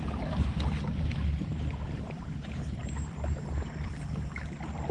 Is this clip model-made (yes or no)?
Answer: yes